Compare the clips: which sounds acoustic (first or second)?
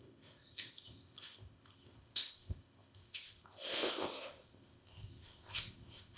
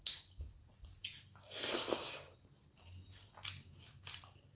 second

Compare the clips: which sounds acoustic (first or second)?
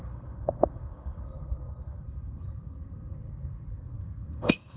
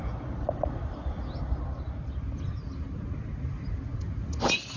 second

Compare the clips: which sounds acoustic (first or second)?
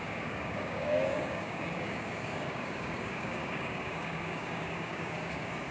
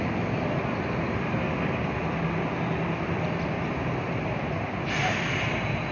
second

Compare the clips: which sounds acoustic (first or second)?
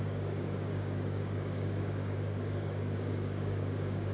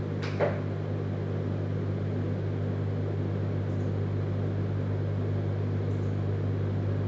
second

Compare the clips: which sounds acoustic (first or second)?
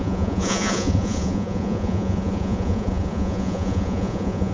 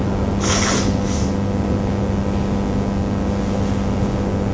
second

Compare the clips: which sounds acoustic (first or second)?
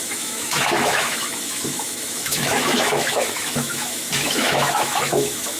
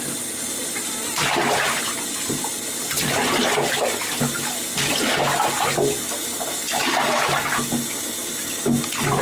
second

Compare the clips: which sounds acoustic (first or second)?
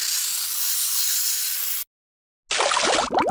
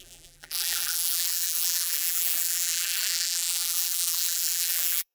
first